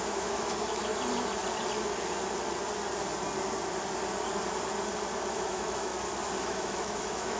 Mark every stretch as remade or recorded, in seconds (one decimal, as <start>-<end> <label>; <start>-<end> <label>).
0.0-0.9 remade; 0.9-5.3 recorded; 5.3-5.9 remade; 5.9-6.4 recorded; 6.4-7.4 remade